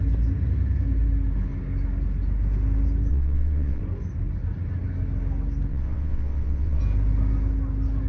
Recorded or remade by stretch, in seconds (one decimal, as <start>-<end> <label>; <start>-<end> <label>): 0.0-3.1 recorded; 3.1-3.8 remade; 3.8-5.7 recorded; 5.7-6.8 remade; 6.8-8.1 recorded